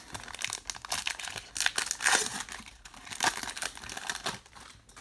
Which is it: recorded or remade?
recorded